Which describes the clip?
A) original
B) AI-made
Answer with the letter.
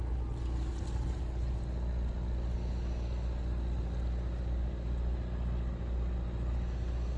A